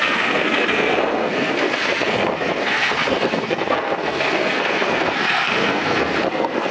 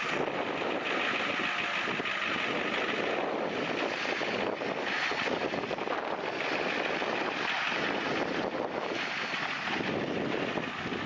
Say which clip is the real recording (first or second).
second